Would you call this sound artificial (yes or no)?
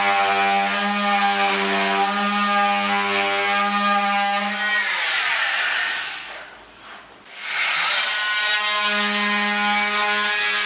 no